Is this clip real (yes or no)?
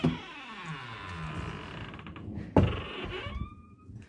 yes